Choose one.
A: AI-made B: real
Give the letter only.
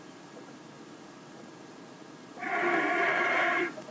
A